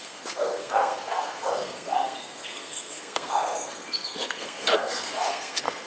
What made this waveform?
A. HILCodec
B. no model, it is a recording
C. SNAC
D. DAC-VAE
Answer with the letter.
C